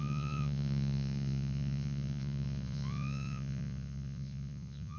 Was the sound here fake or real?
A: fake